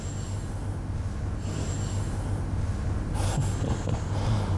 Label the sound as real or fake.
real